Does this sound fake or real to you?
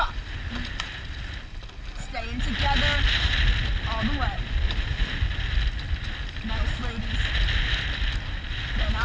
real